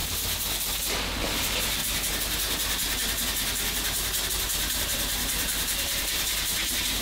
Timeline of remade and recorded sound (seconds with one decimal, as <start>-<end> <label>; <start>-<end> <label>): 0.0-1.4 recorded; 1.4-1.8 remade; 1.8-4.3 recorded; 4.3-7.0 remade